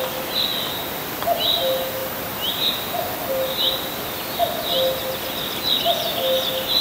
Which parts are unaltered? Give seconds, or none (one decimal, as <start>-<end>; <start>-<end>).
0.0-6.8